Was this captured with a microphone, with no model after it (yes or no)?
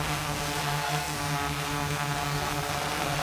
no